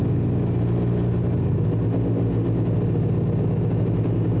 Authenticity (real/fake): real